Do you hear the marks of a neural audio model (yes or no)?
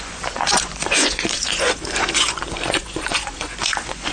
yes